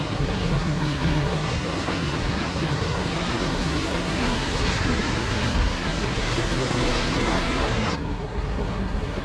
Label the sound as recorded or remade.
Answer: remade